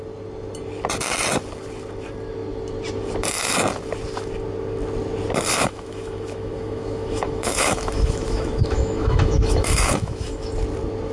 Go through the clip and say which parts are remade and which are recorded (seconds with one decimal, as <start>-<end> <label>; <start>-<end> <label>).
0.0-5.5 recorded; 5.5-10.5 remade; 10.5-11.1 recorded